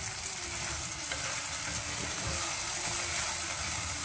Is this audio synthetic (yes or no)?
no